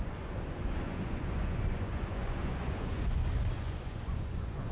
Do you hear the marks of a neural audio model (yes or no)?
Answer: yes